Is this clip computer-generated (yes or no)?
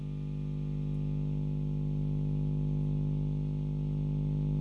no